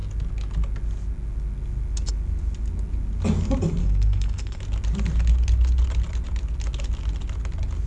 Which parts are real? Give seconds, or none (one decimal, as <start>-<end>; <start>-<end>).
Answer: 0.0-3.8; 4.6-7.9